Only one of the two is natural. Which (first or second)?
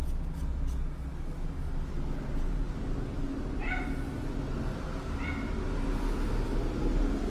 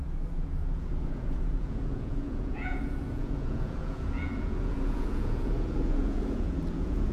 first